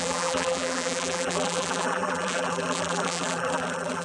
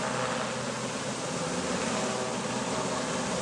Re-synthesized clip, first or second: first